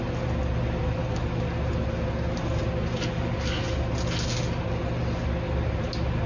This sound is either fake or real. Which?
real